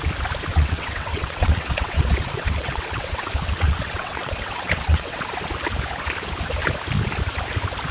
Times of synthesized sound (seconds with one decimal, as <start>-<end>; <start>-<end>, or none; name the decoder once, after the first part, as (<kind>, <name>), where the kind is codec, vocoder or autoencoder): 0.5-5.2 (vocoder, WaveNeXt)